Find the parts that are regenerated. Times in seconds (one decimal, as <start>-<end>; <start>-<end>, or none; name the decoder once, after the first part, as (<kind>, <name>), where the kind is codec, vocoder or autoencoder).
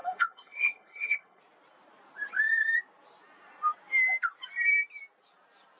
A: 0.0-1.4 (codec, HILCodec)